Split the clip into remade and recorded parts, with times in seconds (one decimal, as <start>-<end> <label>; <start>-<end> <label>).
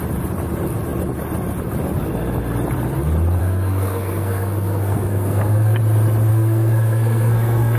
0.0-3.4 recorded; 3.4-5.8 remade; 5.8-6.3 recorded; 6.3-7.8 remade